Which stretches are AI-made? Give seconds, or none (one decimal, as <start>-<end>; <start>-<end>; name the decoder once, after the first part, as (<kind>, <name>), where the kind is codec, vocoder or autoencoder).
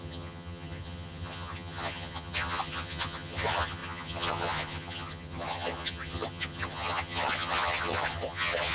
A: 0.0-8.7 (vocoder, HiFi-GAN)